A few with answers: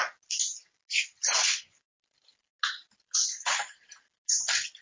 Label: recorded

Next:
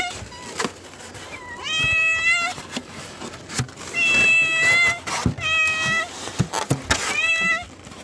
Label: recorded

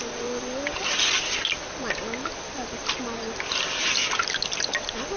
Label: recorded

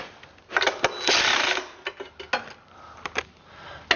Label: recorded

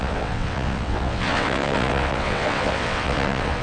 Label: remade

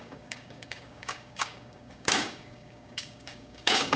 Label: remade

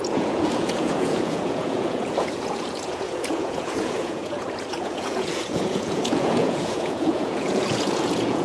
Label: remade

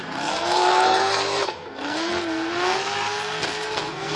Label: remade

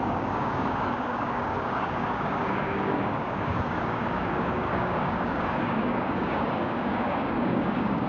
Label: remade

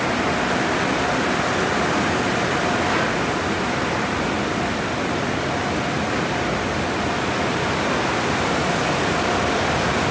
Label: recorded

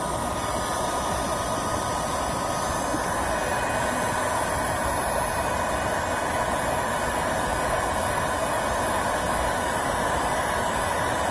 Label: recorded